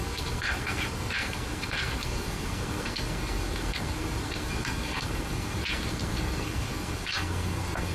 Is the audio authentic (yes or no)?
no